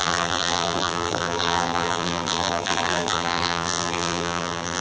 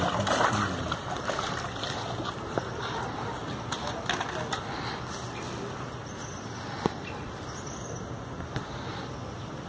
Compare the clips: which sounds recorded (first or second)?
second